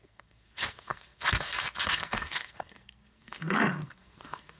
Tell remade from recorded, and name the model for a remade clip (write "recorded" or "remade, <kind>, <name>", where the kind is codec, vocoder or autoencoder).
remade, codec, SNAC